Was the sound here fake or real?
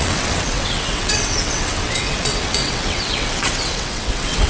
fake